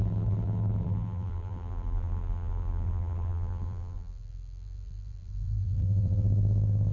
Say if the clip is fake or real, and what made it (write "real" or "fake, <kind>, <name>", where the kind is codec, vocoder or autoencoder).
fake, vocoder, BigVGAN v2